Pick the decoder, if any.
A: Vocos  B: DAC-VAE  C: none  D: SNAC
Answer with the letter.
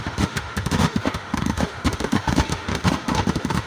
B